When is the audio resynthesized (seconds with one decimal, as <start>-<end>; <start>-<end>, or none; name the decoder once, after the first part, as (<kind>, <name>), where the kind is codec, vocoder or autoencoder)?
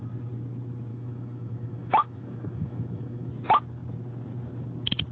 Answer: 0.9-3.3 (autoencoder, DAC-VAE)